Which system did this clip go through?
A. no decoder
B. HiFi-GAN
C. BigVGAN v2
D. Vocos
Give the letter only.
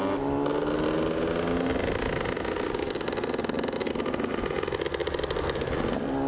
A